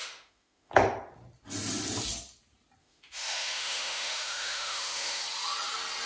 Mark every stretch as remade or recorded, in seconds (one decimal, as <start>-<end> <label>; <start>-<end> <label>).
0.0-0.7 remade; 0.7-2.8 recorded; 2.8-5.2 remade; 5.2-6.1 recorded

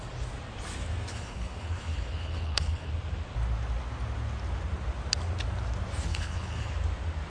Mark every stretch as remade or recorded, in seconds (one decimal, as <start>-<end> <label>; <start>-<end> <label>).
0.0-1.1 recorded; 1.1-2.9 remade; 2.9-6.1 recorded; 6.1-6.7 remade; 6.7-7.3 recorded